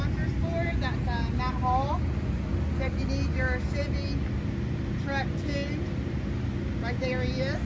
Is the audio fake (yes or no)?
no